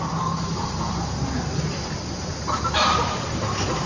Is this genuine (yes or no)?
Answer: yes